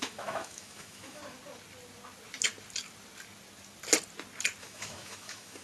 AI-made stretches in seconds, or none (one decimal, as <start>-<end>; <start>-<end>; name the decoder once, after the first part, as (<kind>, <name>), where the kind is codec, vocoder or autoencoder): 0.0-1.2 (autoencoder, DAC-VAE); 4.6-5.6